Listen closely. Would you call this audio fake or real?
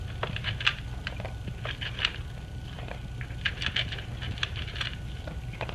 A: real